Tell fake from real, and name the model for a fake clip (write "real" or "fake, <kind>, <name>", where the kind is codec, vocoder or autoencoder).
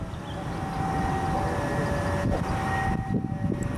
real